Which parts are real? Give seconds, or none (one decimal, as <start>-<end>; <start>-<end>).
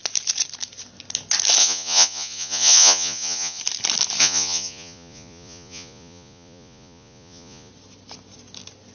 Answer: 0.0-1.6; 3.6-4.2; 7.7-8.9